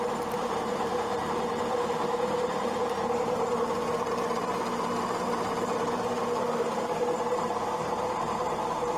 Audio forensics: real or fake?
fake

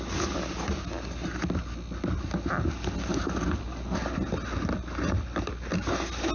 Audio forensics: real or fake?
real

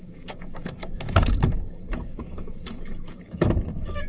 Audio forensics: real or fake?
fake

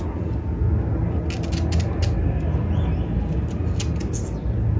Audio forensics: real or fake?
real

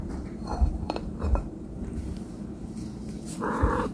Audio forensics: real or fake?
fake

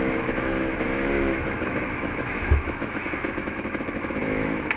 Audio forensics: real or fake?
fake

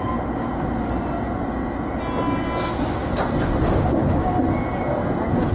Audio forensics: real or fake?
real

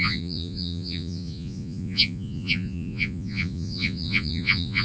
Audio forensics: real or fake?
fake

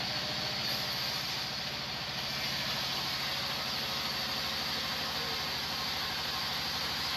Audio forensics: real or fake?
real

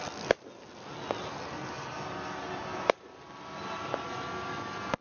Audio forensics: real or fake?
real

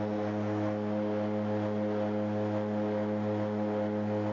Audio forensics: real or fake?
real